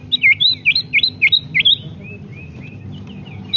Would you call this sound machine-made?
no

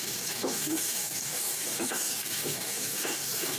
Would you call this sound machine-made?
yes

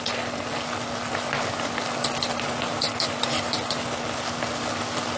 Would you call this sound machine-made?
no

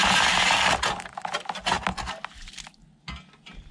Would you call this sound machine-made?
no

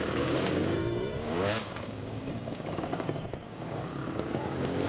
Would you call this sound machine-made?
yes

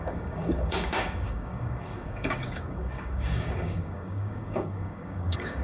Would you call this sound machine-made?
yes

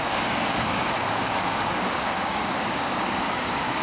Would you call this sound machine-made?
yes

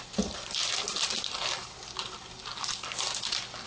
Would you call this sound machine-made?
no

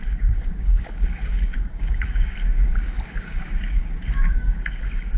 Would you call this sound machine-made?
yes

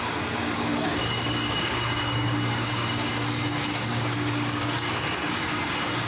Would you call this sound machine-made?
yes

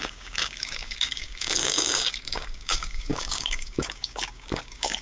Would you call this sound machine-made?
yes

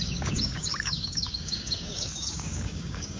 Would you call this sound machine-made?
yes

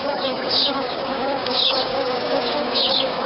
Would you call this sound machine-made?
yes